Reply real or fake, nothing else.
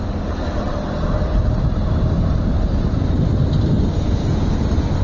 real